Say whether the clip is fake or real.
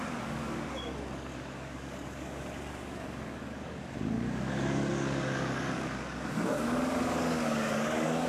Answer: fake